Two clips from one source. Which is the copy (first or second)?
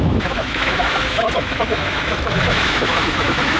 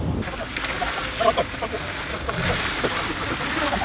first